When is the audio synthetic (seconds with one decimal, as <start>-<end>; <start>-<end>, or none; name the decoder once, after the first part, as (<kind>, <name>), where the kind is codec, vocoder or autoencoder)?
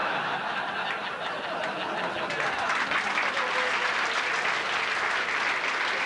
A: none